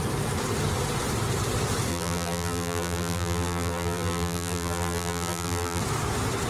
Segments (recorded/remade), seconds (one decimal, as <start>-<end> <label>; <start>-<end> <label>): 0.0-1.9 recorded; 1.9-5.8 remade; 5.8-6.5 recorded